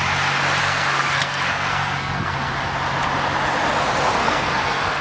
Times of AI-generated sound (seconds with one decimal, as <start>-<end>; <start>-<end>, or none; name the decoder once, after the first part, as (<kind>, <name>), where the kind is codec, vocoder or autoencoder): 0.6-2.5 (codec, SNAC); 4.2-5.0